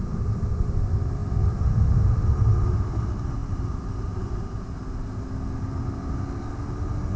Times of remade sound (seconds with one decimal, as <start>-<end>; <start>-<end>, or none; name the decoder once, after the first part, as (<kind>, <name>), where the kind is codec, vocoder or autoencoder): none